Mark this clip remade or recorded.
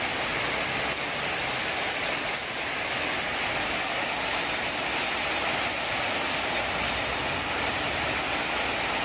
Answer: recorded